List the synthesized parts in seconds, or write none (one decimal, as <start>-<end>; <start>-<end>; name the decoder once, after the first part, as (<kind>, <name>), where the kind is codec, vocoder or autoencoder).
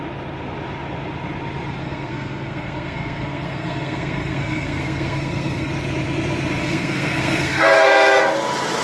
1.8-5.7 (codec, SNAC); 6.6-8.2